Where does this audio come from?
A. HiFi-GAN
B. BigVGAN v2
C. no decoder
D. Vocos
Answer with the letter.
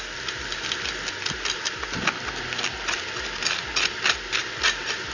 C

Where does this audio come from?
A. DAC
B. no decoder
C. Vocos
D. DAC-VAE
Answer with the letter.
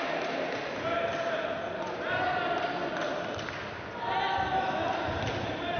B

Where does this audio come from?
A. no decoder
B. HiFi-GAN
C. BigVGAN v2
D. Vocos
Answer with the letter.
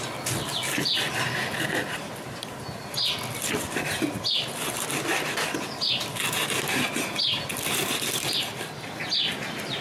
A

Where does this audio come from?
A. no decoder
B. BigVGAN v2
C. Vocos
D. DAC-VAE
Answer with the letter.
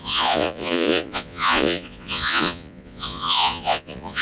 C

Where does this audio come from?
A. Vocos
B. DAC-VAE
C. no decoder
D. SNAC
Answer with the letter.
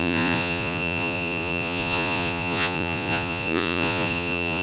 A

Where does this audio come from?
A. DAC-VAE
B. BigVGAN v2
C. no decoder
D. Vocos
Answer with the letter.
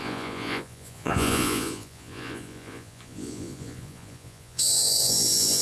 D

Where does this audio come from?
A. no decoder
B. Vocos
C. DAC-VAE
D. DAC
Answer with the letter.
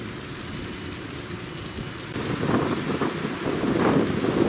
A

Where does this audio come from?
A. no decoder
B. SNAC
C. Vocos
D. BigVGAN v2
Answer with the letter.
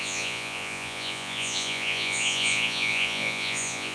C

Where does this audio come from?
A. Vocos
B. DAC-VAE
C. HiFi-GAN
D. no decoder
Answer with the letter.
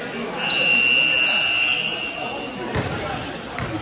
D